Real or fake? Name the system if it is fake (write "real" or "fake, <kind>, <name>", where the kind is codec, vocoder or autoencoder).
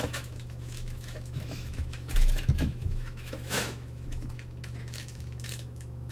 fake, autoencoder, DAC-VAE